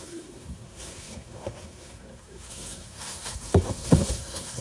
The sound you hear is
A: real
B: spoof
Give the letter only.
B